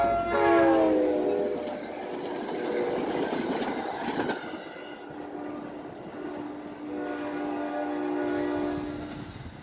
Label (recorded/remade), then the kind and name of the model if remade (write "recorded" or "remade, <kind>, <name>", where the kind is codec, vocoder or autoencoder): recorded